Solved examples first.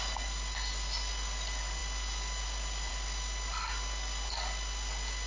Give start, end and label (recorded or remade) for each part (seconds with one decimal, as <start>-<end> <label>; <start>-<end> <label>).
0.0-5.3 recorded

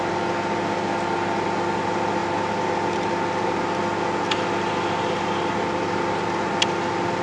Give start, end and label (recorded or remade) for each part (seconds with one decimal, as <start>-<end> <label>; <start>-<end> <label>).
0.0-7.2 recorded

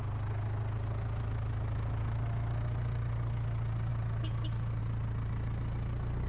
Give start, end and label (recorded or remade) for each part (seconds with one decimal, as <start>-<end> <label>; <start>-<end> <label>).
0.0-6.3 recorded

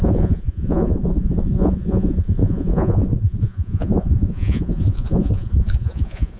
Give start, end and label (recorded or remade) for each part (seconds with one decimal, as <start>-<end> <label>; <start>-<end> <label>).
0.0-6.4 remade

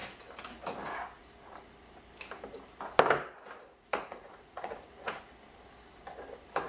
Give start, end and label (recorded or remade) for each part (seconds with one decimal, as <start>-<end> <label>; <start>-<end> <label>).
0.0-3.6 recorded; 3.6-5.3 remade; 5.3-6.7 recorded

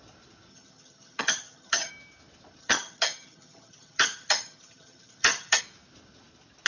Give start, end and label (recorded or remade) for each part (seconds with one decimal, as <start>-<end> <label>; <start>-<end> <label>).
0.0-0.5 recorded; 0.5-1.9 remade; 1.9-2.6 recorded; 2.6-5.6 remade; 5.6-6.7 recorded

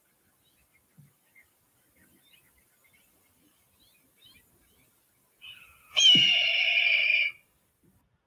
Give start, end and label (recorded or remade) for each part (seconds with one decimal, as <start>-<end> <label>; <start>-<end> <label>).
0.0-8.3 recorded

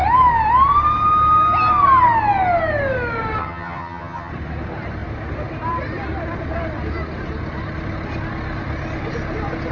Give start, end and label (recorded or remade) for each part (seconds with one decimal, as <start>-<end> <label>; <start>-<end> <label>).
0.0-3.4 recorded; 3.4-4.3 remade; 4.3-9.7 recorded